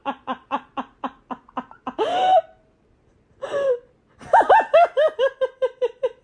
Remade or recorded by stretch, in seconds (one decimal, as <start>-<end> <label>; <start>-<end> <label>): 0.0-0.7 remade; 0.7-6.2 recorded